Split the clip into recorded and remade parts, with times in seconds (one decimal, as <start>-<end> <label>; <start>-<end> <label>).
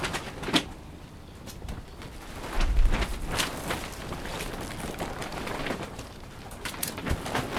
0.0-5.2 recorded; 5.2-7.1 remade; 7.1-7.6 recorded